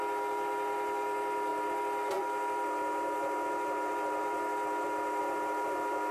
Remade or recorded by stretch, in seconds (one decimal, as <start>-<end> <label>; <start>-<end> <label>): 0.0-6.1 recorded